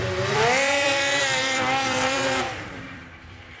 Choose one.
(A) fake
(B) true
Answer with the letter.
A